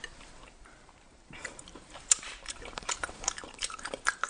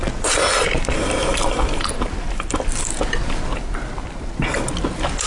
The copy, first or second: first